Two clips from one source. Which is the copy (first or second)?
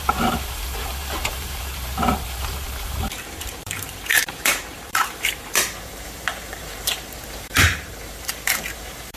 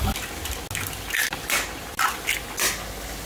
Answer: first